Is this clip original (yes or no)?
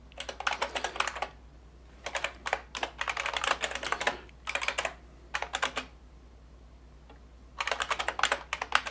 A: yes